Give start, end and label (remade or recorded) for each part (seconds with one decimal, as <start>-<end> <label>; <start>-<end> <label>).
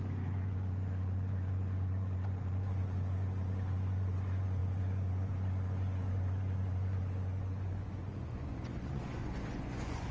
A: 0.0-10.1 remade